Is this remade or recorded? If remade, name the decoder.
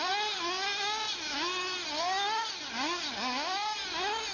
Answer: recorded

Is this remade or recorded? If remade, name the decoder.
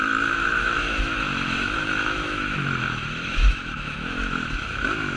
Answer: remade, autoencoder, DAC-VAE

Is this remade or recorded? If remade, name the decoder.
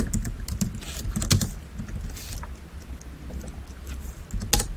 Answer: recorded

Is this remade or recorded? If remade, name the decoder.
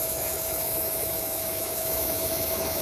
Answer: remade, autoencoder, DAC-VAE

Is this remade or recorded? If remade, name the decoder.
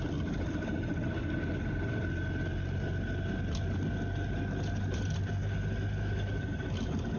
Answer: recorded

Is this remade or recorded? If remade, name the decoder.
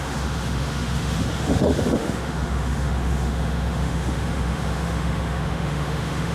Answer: remade, autoencoder, DAC-VAE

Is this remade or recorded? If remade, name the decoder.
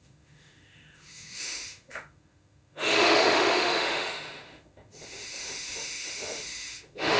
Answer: remade, autoencoder, DAC-VAE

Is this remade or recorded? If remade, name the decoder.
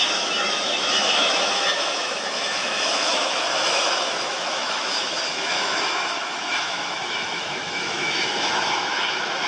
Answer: remade, autoencoder, DAC-VAE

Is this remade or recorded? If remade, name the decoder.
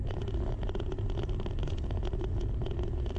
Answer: recorded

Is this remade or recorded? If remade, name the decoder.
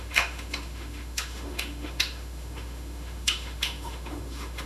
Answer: remade, autoencoder, DAC-VAE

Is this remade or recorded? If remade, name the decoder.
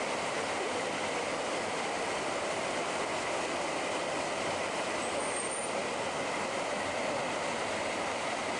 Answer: recorded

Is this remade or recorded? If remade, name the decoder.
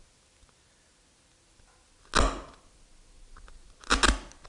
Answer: recorded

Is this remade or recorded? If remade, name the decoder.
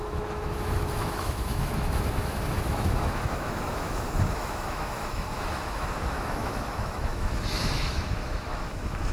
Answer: remade, autoencoder, DAC-VAE